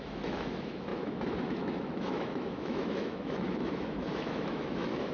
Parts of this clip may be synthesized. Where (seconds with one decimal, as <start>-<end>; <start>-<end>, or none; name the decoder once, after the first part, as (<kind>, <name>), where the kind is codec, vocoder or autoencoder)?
0.0-5.1 (autoencoder, DAC-VAE)